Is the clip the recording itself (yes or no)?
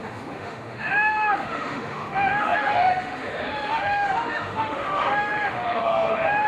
no